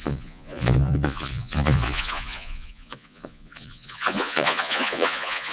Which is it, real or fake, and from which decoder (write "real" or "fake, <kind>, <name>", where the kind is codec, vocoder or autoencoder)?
fake, vocoder, Vocos